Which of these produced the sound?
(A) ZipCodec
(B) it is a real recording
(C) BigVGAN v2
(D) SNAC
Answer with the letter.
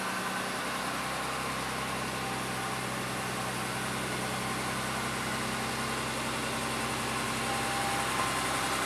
B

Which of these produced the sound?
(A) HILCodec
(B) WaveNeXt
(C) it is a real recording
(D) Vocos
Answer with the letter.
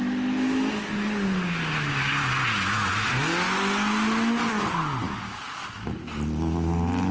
C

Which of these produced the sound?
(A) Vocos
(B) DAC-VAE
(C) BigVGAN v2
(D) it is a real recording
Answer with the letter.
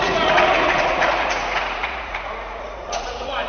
A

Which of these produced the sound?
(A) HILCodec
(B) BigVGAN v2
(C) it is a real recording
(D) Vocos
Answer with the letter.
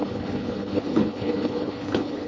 A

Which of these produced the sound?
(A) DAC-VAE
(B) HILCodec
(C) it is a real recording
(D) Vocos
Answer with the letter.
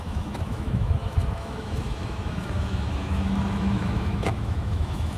A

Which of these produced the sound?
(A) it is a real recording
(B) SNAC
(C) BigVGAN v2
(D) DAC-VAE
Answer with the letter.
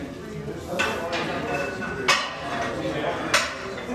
A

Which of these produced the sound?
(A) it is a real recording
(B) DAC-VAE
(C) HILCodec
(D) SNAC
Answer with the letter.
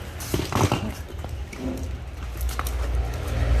A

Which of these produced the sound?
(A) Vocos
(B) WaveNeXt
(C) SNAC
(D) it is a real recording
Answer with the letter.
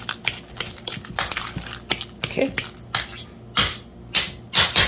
D